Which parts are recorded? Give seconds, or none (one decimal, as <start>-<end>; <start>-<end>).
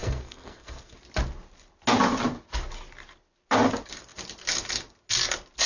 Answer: 1.0-5.7